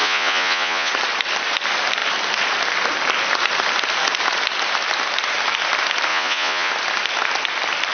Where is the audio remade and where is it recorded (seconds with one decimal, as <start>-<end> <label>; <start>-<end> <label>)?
0.0-0.9 remade; 0.9-6.1 recorded; 6.1-6.7 remade; 6.7-7.9 recorded